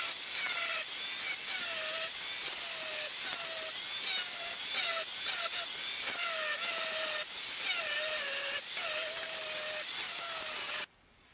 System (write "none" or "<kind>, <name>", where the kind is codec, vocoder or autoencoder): none